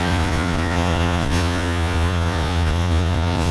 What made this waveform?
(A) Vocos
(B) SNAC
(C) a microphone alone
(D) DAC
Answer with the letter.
A